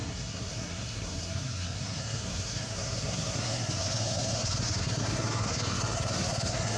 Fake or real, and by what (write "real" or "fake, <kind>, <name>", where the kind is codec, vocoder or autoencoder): fake, codec, SNAC